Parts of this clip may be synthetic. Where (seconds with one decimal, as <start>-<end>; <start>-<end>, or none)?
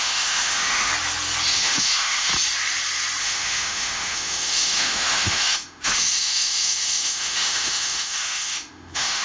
0.0-0.9; 1.5-2.3; 3.2-9.2